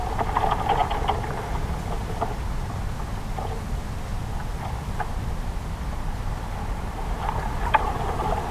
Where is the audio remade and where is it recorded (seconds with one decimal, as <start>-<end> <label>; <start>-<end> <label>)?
0.0-0.8 recorded; 0.8-2.8 remade; 2.8-4.5 recorded; 4.5-7.4 remade; 7.4-8.5 recorded